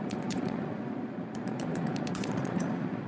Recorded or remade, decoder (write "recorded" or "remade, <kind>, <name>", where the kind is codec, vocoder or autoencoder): remade, vocoder, Vocos